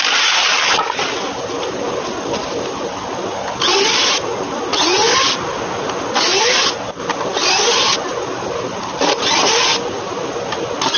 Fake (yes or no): no